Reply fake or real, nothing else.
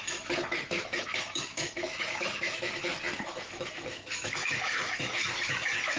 fake